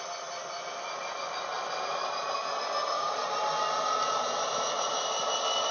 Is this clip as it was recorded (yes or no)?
yes